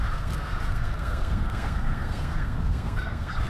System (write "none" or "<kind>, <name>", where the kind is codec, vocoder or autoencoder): codec, SNAC